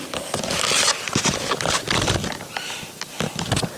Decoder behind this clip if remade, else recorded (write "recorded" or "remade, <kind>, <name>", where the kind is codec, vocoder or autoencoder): recorded